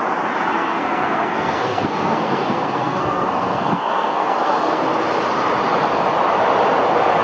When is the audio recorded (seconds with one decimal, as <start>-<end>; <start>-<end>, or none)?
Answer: 0.0-0.5; 4.8-7.2

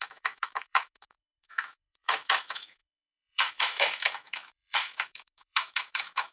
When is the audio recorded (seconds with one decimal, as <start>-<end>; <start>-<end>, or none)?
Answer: none

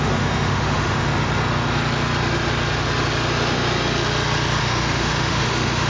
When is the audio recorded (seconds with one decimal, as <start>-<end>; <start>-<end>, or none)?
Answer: 1.1-4.6

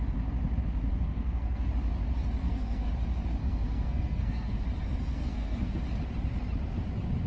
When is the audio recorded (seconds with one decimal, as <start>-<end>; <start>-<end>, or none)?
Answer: 0.0-0.9; 1.7-2.4; 2.9-3.4; 4.6-5.1; 5.8-7.3

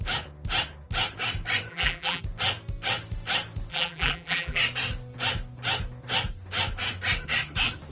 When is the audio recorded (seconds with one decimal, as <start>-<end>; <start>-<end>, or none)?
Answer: 0.0-1.7; 2.2-3.7; 4.6-7.9

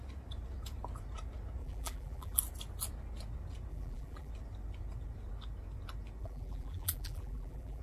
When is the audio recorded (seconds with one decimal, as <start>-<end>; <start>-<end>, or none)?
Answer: 0.0-1.6; 2.4-3.7; 4.3-6.2

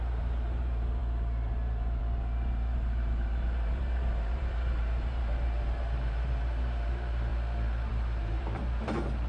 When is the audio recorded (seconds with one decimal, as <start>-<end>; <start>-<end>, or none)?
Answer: 7.3-7.9

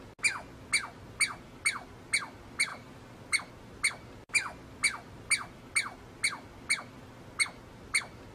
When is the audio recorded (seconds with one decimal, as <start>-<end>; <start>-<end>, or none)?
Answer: 0.0-2.7; 3.5-8.3